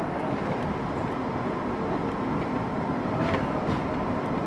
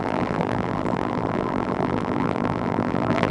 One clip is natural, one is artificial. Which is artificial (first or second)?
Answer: second